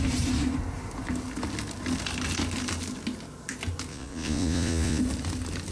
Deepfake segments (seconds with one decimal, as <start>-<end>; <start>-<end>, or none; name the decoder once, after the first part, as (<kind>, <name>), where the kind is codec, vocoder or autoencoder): 3.9-5.0 (vocoder, Vocos)